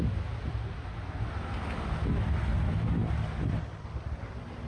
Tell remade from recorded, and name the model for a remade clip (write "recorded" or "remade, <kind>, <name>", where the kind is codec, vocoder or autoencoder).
recorded